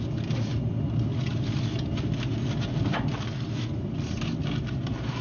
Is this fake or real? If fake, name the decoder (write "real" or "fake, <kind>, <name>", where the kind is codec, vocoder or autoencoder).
real